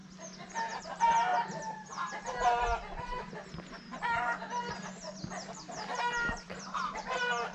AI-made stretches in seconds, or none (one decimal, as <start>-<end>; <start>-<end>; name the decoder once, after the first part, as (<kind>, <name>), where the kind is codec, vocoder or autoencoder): 0.8-1.3 (vocoder, BigVGAN v2); 3.3-7.5